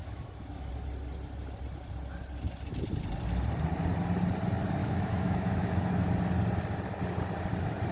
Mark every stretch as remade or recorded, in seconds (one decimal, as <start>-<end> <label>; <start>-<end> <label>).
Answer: 0.0-0.7 remade; 0.7-4.8 recorded; 4.8-6.1 remade; 6.1-7.9 recorded